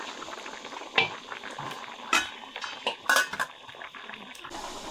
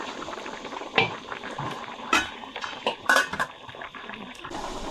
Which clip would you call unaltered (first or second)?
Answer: first